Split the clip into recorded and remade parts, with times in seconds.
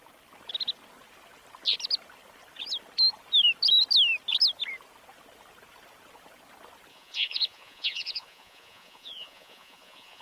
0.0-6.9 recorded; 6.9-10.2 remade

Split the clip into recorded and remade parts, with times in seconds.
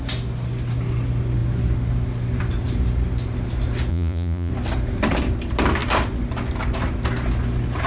0.0-3.9 recorded; 3.9-4.5 remade; 4.5-7.9 recorded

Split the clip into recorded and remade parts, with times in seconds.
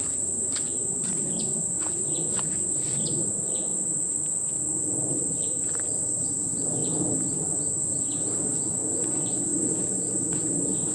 0.0-3.7 remade; 3.7-6.0 recorded; 6.0-6.8 remade; 6.8-8.0 recorded; 8.0-10.9 remade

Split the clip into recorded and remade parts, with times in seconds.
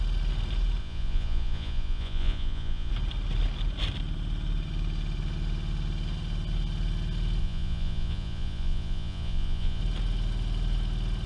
0.0-0.8 recorded; 0.8-2.9 remade; 2.9-7.4 recorded; 7.4-9.8 remade; 9.8-11.3 recorded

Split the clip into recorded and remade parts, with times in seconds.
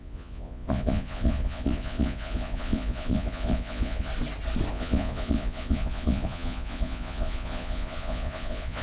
0.0-4.1 remade; 4.1-4.7 recorded; 4.7-8.8 remade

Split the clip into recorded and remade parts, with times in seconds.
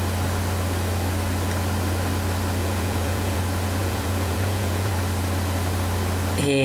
0.0-2.6 recorded; 2.6-3.4 remade; 3.4-3.8 recorded; 3.8-4.9 remade; 4.9-6.6 recorded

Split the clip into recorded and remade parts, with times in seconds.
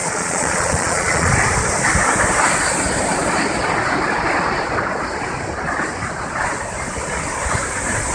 0.0-1.3 remade; 1.3-8.1 recorded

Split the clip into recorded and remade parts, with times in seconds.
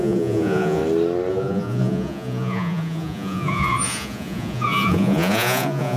0.0-0.8 remade; 0.8-1.3 recorded; 1.3-6.0 remade